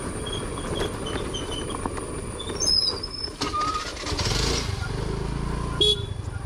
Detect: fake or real real